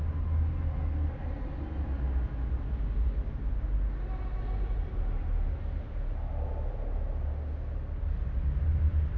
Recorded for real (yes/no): yes